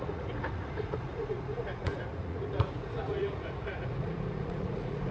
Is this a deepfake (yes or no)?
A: yes